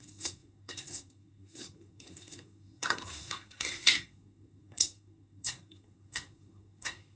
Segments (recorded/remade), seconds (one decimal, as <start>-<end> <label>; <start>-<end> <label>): 0.0-7.2 remade